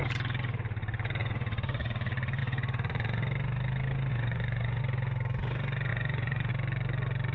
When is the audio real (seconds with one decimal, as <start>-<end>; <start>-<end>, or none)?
0.0-1.2; 1.9-2.4; 3.2-4.1; 4.8-5.9; 6.5-7.3

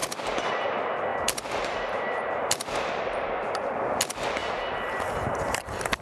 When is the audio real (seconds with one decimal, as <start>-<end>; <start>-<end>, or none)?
0.0-1.1; 3.7-4.4